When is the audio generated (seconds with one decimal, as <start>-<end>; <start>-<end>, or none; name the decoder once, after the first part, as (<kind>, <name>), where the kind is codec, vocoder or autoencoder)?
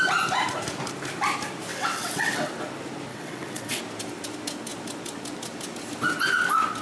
1.7-2.5 (vocoder, WaveNeXt); 3.1-3.8